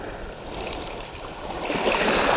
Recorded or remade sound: recorded